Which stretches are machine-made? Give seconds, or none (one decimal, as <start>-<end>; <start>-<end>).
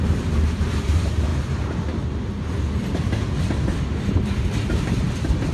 0.0-1.3; 4.6-5.5